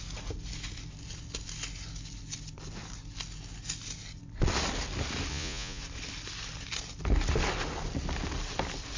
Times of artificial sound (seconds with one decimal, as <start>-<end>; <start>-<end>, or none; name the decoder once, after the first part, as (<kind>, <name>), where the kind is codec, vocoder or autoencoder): 5.3-5.8 (vocoder, Vocos)